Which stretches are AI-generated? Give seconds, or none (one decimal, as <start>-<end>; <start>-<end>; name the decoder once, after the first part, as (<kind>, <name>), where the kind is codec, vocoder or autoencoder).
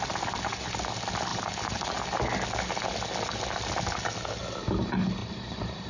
1.3-1.9 (vocoder, BigVGAN v2); 5.2-5.9